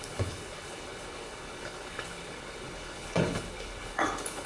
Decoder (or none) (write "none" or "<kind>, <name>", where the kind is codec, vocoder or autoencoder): codec, HILCodec